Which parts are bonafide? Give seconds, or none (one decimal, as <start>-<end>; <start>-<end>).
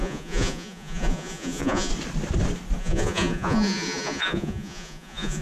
1.9-2.8